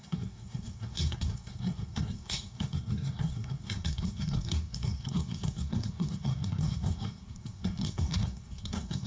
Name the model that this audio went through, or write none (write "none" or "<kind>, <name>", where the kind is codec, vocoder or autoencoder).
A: codec, SNAC